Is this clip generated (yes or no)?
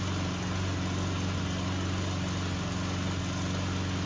no